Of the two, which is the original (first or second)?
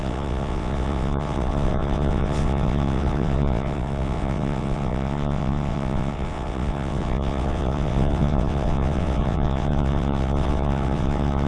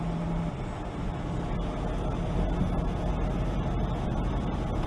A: second